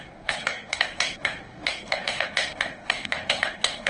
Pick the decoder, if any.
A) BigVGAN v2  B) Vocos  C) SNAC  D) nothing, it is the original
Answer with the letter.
C